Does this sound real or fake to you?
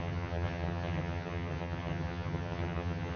fake